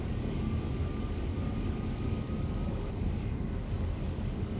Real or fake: fake